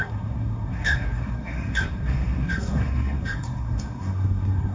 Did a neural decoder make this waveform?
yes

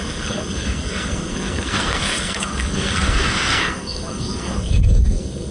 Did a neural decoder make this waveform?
yes